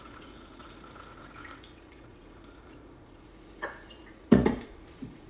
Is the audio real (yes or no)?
no